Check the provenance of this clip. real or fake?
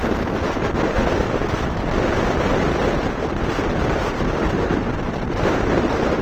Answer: real